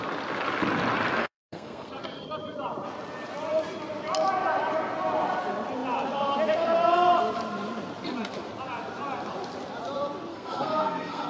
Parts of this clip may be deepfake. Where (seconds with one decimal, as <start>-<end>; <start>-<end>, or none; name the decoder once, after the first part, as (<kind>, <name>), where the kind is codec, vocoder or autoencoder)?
1.2-1.9 (codec, SNAC); 10.3-11.3

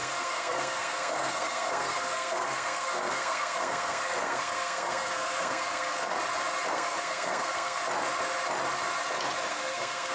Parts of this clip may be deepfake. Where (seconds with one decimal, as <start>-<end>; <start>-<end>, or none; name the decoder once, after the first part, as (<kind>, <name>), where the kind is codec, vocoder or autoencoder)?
0.0-6.1 (codec, SNAC); 6.7-7.8; 9.5-10.1

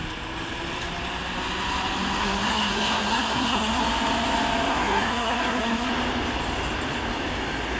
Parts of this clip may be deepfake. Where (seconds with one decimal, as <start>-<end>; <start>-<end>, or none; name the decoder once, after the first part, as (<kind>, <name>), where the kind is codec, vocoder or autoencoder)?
2.2-3.8 (codec, SNAC); 4.7-5.9

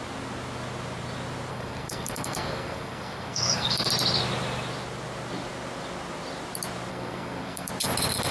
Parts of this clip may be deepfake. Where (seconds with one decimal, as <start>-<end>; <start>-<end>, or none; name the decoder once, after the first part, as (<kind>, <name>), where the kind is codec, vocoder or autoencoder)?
1.5-3.9 (codec, SNAC); 6.9-7.7

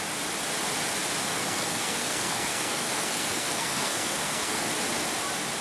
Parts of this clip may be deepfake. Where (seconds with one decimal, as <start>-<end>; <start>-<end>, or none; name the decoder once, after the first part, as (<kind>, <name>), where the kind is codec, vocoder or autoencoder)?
1.3-4.7 (codec, SNAC)

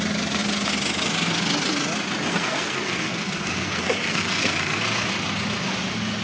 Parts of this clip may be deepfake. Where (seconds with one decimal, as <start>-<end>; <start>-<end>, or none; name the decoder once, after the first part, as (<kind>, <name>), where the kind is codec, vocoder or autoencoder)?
2.3-4.8 (codec, SNAC)